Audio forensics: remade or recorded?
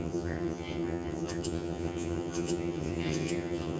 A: remade